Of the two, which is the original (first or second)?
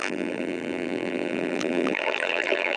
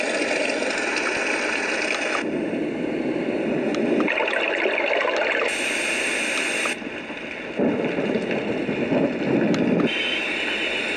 second